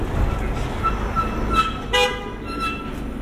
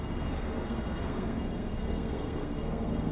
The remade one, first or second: second